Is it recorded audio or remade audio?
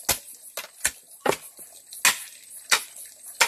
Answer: recorded